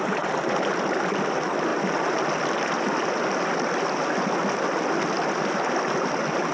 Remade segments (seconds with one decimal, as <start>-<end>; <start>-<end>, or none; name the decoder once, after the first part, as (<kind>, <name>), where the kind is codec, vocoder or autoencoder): none